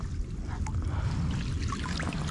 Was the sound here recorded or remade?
recorded